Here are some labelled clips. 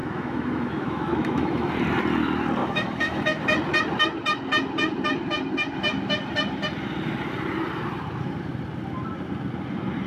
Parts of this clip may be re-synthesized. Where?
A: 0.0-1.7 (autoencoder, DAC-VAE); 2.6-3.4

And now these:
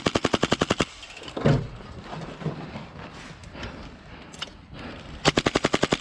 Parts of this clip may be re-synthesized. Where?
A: none